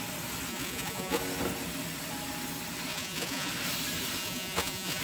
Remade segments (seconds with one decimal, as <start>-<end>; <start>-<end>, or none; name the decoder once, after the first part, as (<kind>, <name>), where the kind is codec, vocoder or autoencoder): 0.5-1.2 (vocoder, Vocos); 2.9-3.5; 4.2-5.0